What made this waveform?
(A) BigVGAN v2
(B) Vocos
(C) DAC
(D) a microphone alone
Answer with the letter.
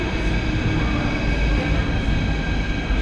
D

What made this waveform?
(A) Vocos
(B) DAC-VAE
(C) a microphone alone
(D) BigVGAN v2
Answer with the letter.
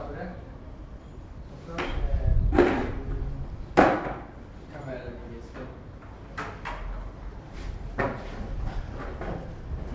C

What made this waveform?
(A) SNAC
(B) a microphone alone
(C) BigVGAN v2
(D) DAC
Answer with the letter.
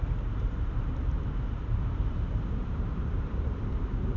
C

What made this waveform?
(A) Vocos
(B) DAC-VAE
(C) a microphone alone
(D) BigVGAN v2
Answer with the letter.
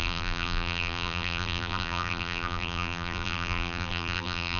D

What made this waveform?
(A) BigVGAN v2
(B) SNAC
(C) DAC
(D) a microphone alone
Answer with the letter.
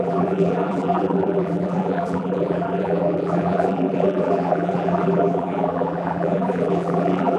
A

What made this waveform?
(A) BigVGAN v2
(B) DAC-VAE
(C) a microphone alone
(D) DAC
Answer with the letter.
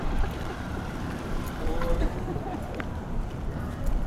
A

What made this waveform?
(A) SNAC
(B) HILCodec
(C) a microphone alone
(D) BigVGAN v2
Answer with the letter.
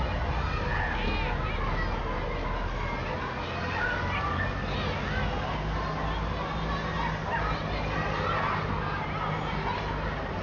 C